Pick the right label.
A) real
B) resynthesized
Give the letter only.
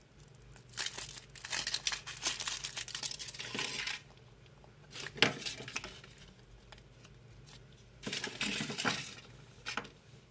A